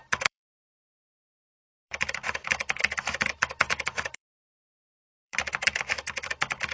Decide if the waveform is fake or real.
fake